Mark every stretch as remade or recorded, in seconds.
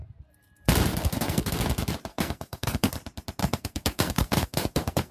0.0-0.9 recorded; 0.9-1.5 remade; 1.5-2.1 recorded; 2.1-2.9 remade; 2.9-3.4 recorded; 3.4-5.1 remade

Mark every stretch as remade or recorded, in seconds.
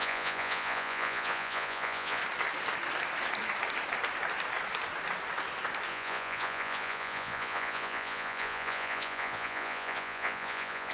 0.0-2.2 remade; 2.2-5.9 recorded; 5.9-10.9 remade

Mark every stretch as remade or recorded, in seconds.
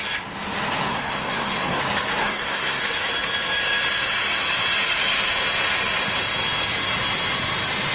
0.0-0.9 recorded; 0.9-1.8 remade; 1.8-2.2 recorded; 2.2-2.8 remade; 2.8-7.9 recorded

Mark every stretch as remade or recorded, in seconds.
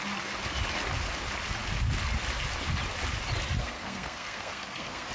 0.0-3.6 recorded; 3.6-5.1 remade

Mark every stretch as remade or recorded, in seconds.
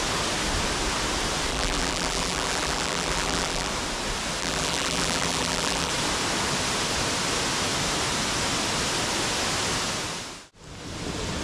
0.0-1.5 recorded; 1.5-3.7 remade; 3.7-4.4 recorded; 4.4-5.9 remade; 5.9-11.4 recorded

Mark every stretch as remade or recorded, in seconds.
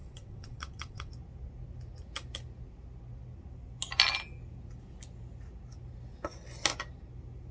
0.0-1.1 remade; 1.1-7.5 recorded